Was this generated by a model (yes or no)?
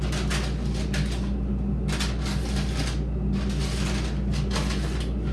no